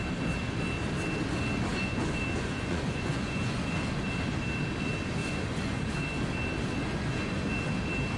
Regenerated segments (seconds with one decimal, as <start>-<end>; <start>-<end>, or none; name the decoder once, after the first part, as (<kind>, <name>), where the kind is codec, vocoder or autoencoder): 1.7-3.8 (vocoder, Vocos); 5.2-5.9; 6.8-7.5